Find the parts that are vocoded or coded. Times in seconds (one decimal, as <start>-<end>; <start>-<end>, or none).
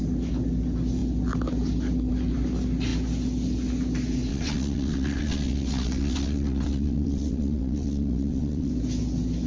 4.3-8.7